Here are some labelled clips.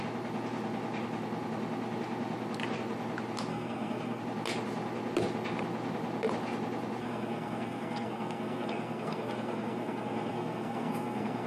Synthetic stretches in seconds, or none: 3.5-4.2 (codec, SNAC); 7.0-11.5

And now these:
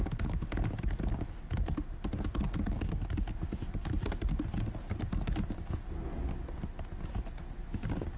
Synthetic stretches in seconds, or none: none

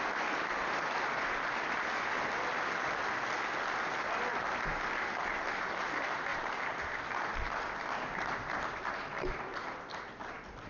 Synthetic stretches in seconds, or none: 6.3-7.0 (vocoder, BigVGAN v2); 9.5-10.7

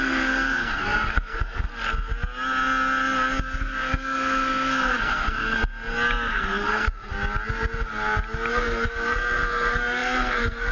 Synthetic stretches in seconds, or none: 0.0-1.7 (codec, SNAC); 3.4-5.6; 6.3-7.1; 8.5-10.7